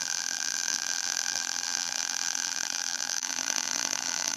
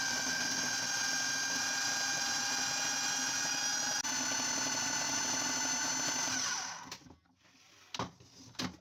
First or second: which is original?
second